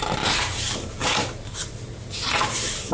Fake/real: real